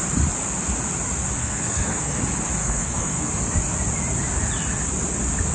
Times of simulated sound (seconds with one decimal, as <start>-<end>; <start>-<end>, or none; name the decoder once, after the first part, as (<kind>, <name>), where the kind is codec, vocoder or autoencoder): 1.4-2.2 (codec, SNAC); 2.6-3.3